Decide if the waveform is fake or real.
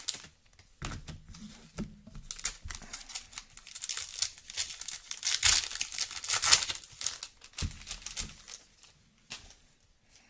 real